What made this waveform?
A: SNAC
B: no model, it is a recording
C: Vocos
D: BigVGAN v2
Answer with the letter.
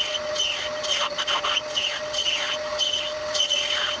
B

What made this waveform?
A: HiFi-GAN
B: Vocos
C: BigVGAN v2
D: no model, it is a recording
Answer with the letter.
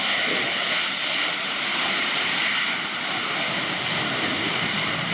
C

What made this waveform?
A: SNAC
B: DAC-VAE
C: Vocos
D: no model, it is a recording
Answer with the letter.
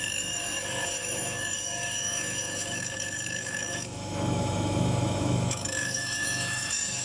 B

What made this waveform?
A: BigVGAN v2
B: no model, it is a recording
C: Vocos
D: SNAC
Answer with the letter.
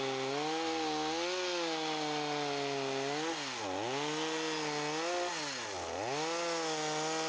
B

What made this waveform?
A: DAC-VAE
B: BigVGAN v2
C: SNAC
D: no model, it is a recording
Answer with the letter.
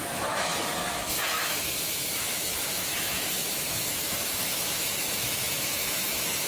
A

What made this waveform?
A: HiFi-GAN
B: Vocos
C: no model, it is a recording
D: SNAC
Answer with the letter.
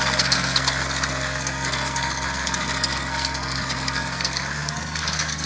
D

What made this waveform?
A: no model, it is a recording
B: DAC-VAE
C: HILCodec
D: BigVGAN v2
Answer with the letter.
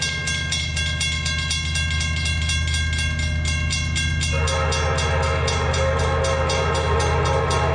A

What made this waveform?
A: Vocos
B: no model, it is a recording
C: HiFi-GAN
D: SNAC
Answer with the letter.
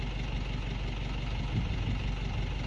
B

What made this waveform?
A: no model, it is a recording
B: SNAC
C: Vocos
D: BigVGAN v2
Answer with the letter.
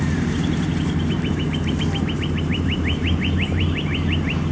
D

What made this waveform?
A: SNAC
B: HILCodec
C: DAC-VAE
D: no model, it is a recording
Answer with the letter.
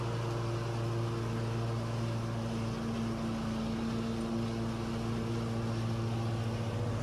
D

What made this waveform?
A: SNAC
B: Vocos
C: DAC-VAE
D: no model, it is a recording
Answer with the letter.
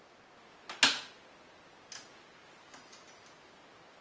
D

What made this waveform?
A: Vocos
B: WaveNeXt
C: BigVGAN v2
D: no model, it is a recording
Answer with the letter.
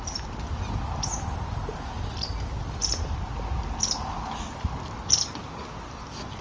D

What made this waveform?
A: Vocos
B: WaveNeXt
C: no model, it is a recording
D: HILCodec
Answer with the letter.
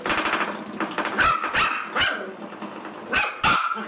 C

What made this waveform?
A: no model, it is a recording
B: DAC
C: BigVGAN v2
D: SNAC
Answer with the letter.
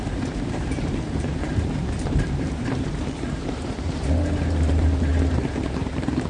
C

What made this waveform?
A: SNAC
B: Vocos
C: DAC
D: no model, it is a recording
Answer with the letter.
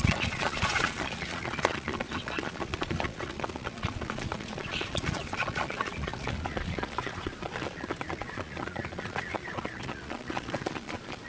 B